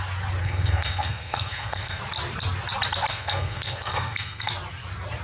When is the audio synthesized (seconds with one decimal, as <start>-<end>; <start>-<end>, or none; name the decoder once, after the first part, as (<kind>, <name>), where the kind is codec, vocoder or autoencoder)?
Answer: 0.4-2.0 (codec, SNAC); 3.1-4.5